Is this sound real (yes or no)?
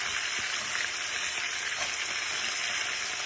yes